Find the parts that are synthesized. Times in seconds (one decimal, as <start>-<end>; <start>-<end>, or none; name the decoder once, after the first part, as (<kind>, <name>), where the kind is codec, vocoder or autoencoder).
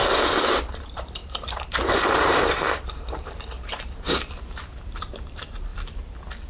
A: 0.6-5.7 (vocoder, BigVGAN v2)